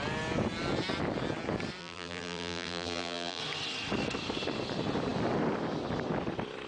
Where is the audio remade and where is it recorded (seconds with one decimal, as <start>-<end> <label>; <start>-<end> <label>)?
0.0-1.8 recorded; 1.8-3.4 remade; 3.4-6.7 recorded